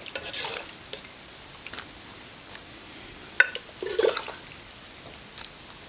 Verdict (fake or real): real